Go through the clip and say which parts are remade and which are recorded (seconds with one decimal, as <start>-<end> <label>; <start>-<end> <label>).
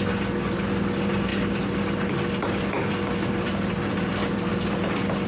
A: 0.0-5.3 recorded